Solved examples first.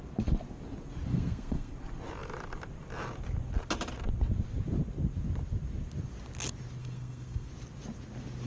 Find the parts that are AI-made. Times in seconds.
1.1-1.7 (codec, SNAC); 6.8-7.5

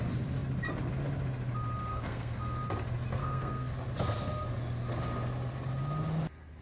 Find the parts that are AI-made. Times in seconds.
1.9-2.6 (codec, SNAC); 3.2-3.7